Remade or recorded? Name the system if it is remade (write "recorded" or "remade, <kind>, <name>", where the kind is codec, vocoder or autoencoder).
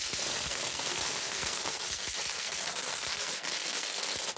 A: remade, codec, SNAC